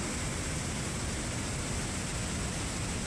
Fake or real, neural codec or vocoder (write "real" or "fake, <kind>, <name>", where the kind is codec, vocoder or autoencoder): real